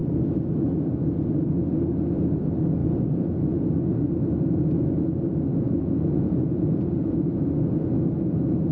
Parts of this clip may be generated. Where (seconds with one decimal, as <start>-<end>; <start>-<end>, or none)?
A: 2.8-3.5; 5.5-7.2